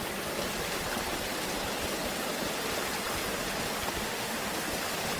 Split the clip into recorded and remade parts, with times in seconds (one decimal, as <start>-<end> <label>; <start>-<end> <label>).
0.0-4.0 recorded; 4.0-4.5 remade; 4.5-5.2 recorded